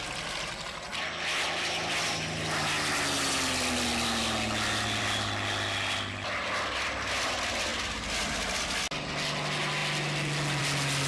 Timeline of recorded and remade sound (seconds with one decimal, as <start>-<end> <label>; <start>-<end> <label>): 0.0-11.1 recorded